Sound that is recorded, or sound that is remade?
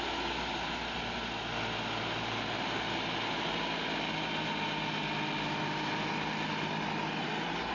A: recorded